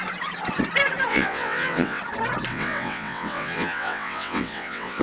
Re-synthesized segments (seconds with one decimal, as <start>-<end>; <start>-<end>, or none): 1.1-2.0; 2.5-5.0